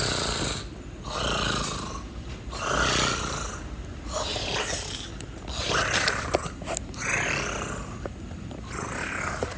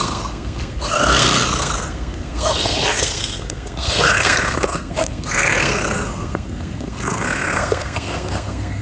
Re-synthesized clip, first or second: second